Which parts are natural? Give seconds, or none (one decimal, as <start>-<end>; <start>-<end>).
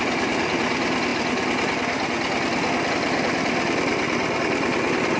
0.0-5.2